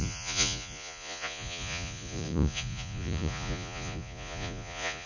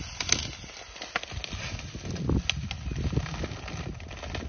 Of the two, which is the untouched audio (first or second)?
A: second